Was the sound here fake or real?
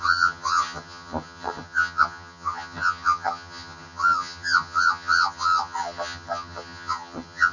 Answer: fake